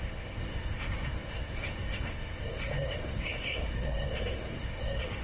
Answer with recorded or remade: remade